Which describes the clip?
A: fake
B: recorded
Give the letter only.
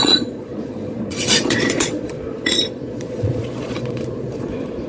A